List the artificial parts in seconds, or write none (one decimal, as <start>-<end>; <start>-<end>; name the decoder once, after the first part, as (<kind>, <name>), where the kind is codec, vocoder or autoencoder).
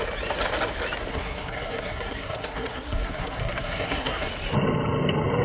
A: 1.1-4.3 (codec, SNAC)